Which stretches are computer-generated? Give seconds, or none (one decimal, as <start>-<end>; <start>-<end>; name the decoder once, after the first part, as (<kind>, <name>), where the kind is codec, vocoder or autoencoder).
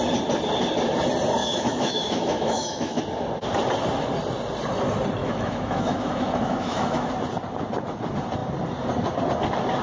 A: 1.4-3.0 (autoencoder, DAC-VAE); 5.2-7.1